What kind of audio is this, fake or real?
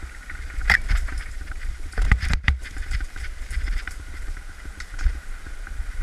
fake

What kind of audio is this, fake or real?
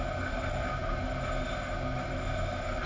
real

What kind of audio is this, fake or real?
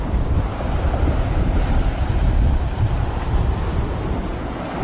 real